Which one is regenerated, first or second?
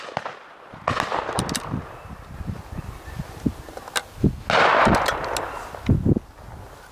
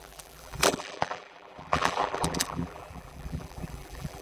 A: second